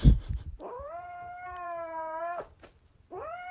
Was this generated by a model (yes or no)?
yes